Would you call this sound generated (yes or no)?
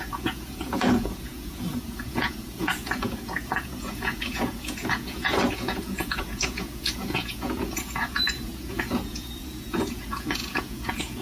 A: yes